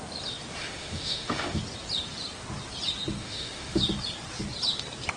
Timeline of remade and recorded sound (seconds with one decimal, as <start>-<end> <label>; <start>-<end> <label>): 0.0-0.6 recorded; 0.6-1.6 remade; 1.6-3.2 recorded; 3.2-3.8 remade; 3.8-5.2 recorded